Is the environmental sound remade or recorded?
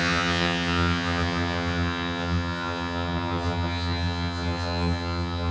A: remade